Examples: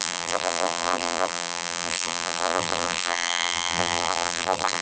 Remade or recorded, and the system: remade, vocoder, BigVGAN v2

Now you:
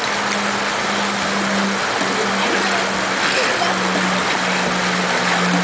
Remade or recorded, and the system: recorded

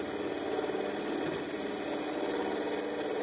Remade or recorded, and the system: recorded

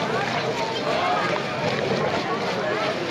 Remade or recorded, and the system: recorded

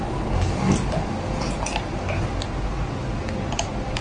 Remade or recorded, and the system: recorded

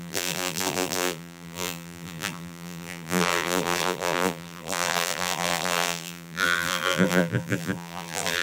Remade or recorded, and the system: remade, vocoder, BigVGAN v2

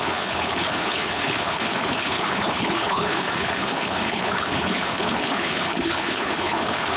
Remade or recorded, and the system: remade, codec, HILCodec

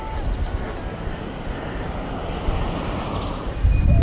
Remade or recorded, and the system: recorded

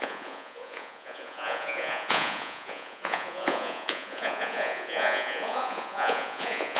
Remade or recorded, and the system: remade, vocoder, Vocos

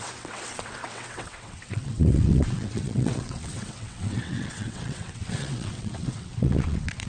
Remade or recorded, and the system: remade, vocoder, WaveNeXt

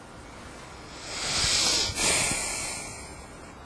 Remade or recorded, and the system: recorded